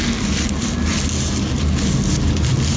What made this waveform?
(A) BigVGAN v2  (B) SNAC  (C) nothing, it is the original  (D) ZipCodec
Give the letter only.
C